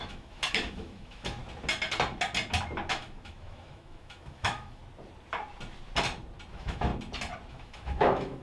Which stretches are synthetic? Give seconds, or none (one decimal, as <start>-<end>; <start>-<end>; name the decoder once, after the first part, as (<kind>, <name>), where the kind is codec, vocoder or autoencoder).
0.0-1.4 (autoencoder, DAC-VAE); 2.9-4.8; 6.5-6.9; 7.5-8.4